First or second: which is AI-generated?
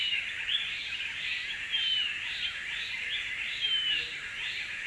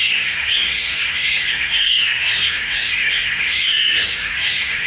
second